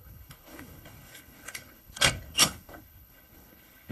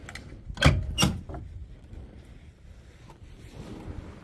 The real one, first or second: second